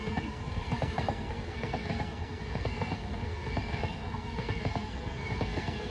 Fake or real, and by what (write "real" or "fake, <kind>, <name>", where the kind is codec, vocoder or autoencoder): fake, codec, SNAC